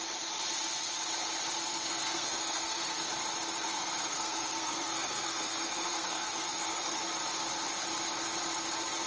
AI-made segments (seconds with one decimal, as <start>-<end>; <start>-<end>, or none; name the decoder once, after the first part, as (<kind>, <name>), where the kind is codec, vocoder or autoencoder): 1.7-3.1 (codec, SNAC); 3.6-7.0